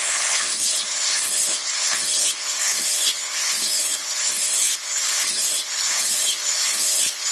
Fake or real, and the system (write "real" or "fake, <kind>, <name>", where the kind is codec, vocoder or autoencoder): fake, codec, HILCodec